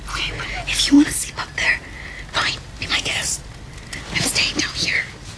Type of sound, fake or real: real